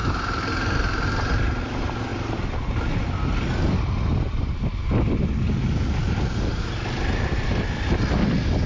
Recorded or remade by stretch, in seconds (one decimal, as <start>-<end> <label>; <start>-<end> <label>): 0.0-8.7 recorded